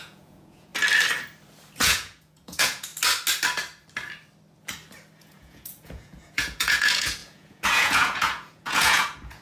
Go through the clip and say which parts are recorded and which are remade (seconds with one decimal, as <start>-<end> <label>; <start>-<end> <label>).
0.0-0.7 remade; 0.7-1.8 recorded; 1.8-2.9 remade; 2.9-5.2 recorded; 5.2-9.4 remade